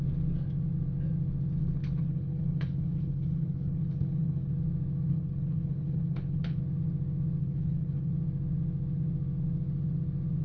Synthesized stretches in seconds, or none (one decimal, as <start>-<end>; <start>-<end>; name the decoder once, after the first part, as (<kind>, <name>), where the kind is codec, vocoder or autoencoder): 1.6-4.5 (codec, HILCodec); 5.1-6.6; 7.4-8.1